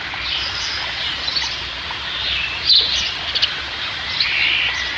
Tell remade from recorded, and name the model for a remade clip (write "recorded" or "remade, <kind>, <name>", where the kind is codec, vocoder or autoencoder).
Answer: recorded